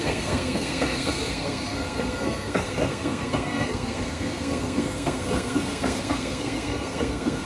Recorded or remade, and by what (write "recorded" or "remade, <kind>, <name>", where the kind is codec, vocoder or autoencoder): remade, codec, SNAC